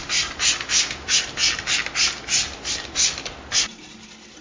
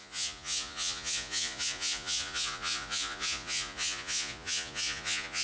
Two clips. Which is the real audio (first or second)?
first